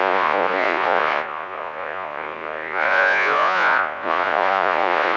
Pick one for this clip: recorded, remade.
remade